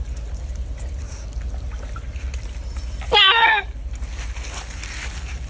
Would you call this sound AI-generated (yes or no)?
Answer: no